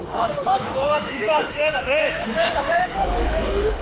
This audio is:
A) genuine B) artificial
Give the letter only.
B